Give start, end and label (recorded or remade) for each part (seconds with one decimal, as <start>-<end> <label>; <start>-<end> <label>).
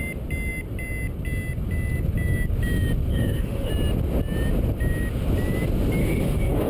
0.0-3.1 recorded; 3.1-3.7 remade; 3.7-6.0 recorded; 6.0-6.7 remade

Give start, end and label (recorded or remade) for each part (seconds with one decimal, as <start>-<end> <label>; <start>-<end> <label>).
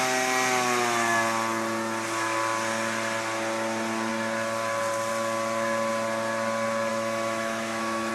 0.0-6.9 recorded; 6.9-8.1 remade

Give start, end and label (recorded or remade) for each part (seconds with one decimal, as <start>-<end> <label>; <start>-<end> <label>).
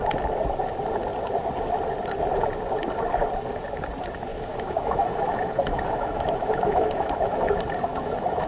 0.0-4.3 recorded; 4.3-7.5 remade; 7.5-7.9 recorded; 7.9-8.5 remade